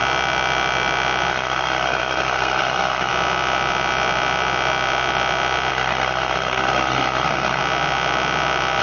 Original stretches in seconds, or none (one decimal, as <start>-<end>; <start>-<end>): 0.0-1.3; 3.1-5.7; 7.6-8.8